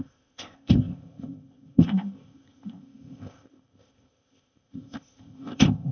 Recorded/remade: remade